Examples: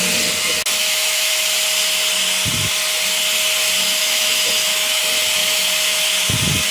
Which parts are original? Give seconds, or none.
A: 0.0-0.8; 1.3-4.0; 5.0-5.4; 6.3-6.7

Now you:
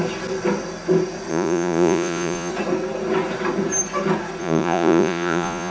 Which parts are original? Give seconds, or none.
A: 0.0-1.3; 2.5-4.4

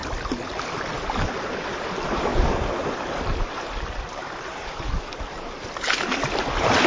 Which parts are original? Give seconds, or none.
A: 0.0-6.9

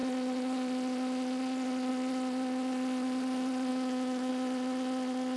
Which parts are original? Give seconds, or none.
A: 0.0-3.7; 4.3-5.4

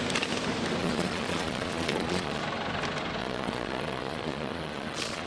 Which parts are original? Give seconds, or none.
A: 0.0-0.8; 2.4-3.2

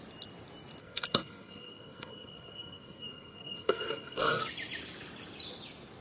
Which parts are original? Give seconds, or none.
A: 0.0-0.8; 4.4-6.0